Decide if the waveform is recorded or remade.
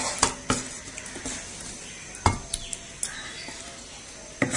recorded